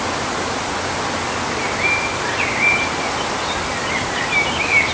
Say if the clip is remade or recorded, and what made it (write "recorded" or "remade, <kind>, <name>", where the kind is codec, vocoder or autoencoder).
recorded